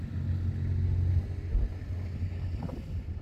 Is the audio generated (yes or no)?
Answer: no